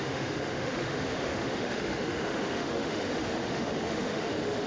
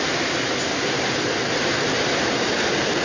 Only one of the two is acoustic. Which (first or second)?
second